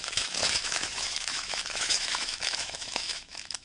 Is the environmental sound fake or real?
fake